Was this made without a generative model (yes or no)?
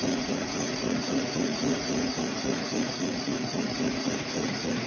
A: no